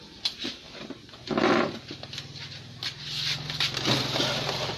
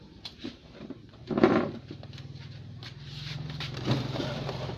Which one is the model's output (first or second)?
second